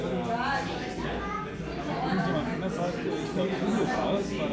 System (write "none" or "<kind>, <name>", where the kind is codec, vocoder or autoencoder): none